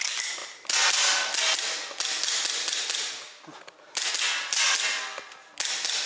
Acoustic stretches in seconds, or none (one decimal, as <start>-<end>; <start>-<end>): 0.0-6.1

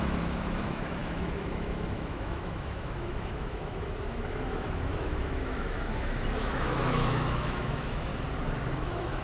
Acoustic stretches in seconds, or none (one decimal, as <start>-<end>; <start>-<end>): 8.1-8.7

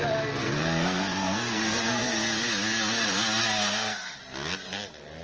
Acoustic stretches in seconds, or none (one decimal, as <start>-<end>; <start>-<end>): 0.0-0.4; 2.0-3.4; 4.2-5.2

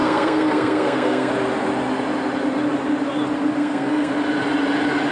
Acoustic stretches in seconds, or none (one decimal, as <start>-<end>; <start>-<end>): 1.3-3.6; 4.1-5.1